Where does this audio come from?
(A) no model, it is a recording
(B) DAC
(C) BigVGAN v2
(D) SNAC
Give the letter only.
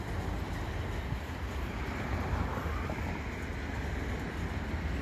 A